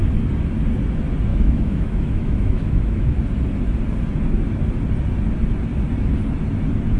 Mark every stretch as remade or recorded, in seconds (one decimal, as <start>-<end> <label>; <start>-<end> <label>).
0.0-1.3 recorded; 1.3-3.2 remade; 3.2-7.0 recorded